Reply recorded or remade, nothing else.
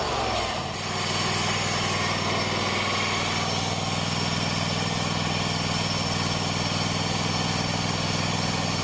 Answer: recorded